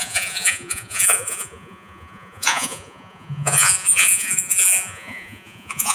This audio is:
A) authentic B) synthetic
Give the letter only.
B